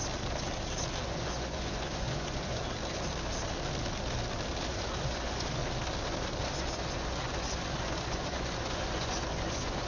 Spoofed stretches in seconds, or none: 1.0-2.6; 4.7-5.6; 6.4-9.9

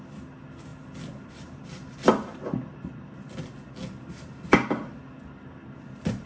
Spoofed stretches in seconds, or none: none

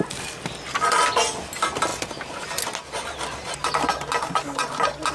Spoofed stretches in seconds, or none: none

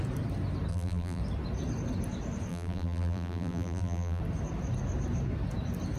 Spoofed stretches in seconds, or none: 0.7-1.2; 2.5-4.2

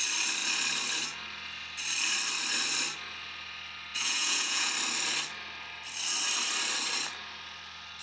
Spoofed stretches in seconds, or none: 3.9-4.7